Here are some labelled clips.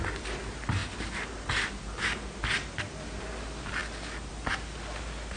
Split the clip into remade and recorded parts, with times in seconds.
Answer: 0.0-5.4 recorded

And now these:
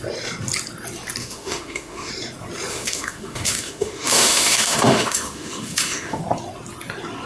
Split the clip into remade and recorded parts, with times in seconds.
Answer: 0.0-1.2 recorded; 1.2-2.1 remade; 2.1-2.7 recorded; 2.7-6.2 remade; 6.2-7.3 recorded

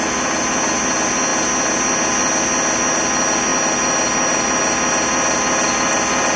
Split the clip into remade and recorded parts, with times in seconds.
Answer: 0.0-6.4 recorded

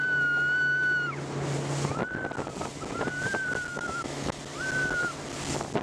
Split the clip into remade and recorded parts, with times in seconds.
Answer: 0.0-3.7 recorded; 3.7-4.4 remade; 4.4-5.8 recorded

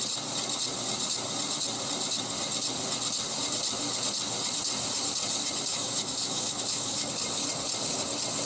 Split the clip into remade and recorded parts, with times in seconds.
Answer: 0.0-5.7 recorded; 5.7-7.1 remade; 7.1-8.5 recorded

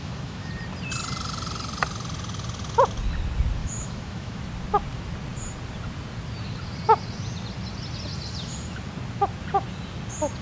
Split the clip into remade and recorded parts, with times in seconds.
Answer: 0.0-0.5 remade; 0.5-3.6 recorded; 3.6-4.4 remade; 4.4-10.4 recorded